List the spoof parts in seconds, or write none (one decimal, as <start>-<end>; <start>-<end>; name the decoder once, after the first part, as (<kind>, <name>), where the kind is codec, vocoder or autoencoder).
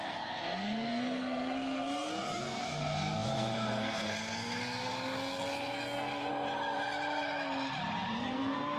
0.0-6.3 (codec, SNAC); 8.2-8.8